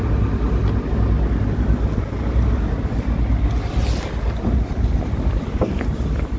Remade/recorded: recorded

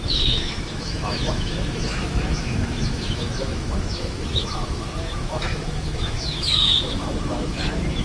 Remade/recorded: remade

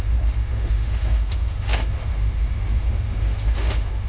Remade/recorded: remade